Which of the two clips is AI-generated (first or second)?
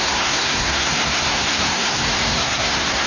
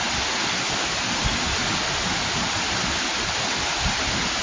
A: first